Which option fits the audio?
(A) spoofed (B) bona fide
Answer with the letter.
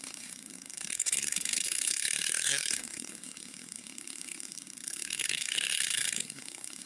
A